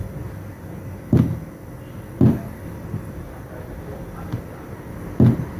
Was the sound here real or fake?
real